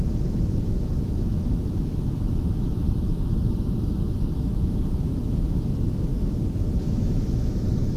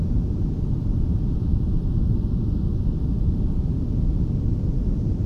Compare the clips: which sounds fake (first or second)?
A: first